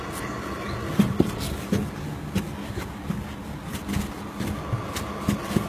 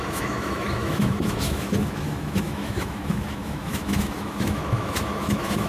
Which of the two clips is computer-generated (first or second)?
second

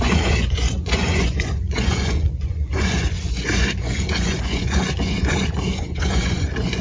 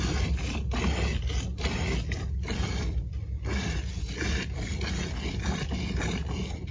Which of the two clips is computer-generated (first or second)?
first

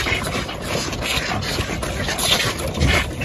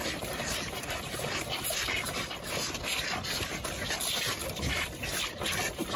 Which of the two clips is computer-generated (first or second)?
second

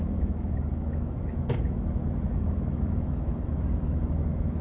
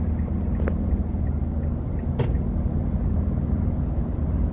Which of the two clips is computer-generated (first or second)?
first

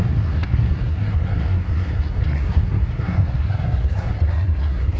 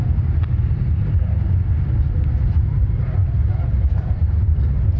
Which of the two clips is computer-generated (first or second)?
first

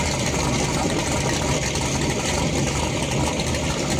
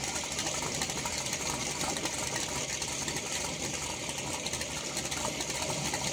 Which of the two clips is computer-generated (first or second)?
second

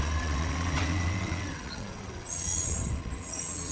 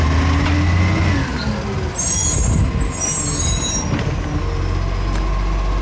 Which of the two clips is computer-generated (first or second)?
first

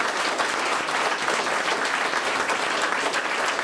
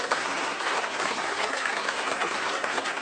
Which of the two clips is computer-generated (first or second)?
second